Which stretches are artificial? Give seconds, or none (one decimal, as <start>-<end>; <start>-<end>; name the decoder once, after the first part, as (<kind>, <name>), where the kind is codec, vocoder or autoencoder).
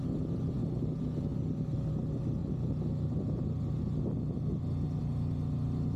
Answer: none